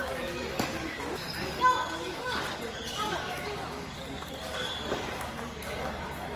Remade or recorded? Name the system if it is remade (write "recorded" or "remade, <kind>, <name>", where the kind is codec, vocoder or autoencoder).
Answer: remade, codec, DAC